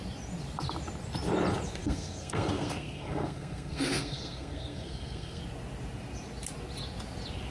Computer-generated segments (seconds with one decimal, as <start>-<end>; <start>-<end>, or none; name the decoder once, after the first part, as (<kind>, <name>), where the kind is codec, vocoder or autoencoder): 1.8-5.4 (codec, SNAC)